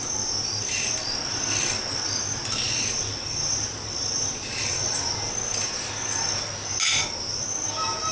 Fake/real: real